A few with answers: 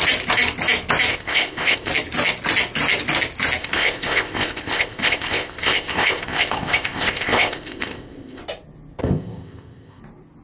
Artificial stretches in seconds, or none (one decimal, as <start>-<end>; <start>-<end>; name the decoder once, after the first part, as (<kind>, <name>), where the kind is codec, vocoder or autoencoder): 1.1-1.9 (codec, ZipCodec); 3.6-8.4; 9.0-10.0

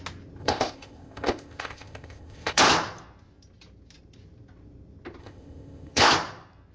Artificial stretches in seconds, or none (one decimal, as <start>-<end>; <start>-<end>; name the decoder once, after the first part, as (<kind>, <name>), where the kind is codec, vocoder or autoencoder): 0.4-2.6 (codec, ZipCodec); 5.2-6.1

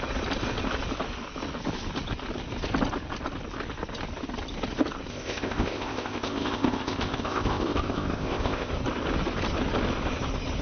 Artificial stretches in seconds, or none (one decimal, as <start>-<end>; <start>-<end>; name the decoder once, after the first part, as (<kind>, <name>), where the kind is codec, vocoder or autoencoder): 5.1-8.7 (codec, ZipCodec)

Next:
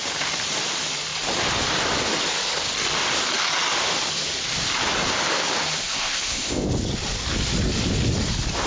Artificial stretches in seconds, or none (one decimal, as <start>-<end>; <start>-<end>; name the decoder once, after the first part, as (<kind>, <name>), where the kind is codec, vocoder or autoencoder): 5.8-6.7 (codec, ZipCodec)

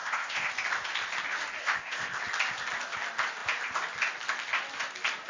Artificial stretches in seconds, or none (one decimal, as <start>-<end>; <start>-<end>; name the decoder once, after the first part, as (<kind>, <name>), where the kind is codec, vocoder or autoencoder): 0.0-0.5 (codec, ZipCodec); 1.6-2.2

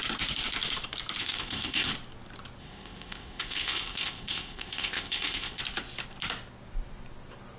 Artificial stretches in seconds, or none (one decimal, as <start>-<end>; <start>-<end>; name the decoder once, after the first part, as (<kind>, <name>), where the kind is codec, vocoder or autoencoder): 1.2-1.9 (codec, ZipCodec); 2.6-5.6

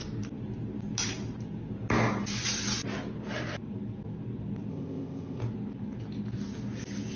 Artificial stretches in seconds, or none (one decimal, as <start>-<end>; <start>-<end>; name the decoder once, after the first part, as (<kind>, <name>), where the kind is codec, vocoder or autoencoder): 4.7-5.4 (codec, ZipCodec)

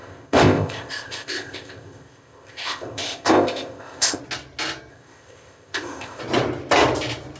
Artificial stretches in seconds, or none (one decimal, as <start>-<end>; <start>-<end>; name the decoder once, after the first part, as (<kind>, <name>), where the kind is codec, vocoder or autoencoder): 0.0-4.2 (codec, ZipCodec); 4.9-6.2